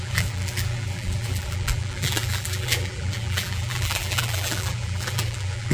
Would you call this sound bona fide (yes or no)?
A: no